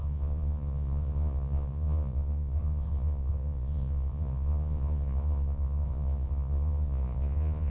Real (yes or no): no